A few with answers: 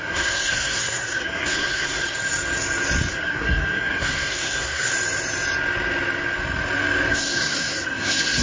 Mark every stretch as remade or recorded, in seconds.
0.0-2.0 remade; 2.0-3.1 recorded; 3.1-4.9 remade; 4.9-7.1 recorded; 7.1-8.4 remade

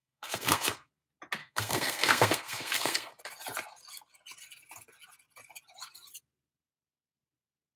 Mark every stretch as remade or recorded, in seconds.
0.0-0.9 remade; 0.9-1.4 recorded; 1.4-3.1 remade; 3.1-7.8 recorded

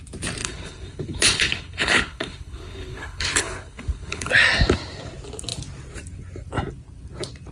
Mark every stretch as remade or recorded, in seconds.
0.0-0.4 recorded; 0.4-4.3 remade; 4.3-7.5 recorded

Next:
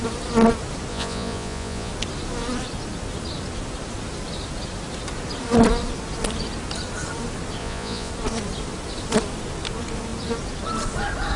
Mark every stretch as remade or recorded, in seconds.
0.0-0.9 recorded; 0.9-1.9 remade; 1.9-7.6 recorded; 7.6-8.1 remade; 8.1-11.4 recorded

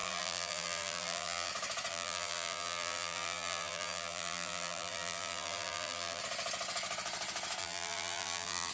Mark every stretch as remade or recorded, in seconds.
0.0-1.5 remade; 1.5-1.9 recorded; 1.9-6.2 remade; 6.2-7.6 recorded; 7.6-8.7 remade